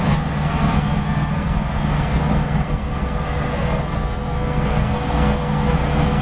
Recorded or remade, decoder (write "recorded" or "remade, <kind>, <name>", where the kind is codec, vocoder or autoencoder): remade, codec, SNAC